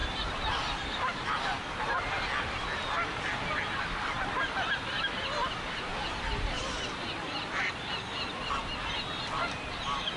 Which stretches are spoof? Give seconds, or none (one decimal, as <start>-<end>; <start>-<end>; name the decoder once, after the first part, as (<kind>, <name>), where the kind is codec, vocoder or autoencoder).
0.0-2.3 (vocoder, BigVGAN v2); 4.4-10.2